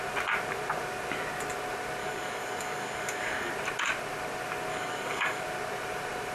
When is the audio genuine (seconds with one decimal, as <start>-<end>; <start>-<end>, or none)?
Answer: 0.0-2.0; 3.5-4.7; 5.4-6.3